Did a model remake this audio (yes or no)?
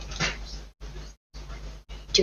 no